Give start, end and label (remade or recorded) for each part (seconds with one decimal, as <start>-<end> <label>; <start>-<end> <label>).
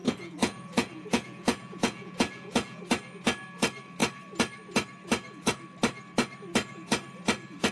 0.0-2.8 remade; 2.8-7.7 recorded